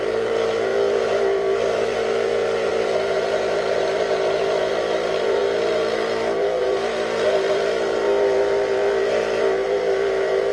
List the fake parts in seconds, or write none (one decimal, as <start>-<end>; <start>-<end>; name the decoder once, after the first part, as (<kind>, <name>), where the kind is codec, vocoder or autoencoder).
0.0-10.5 (vocoder, BigVGAN v2)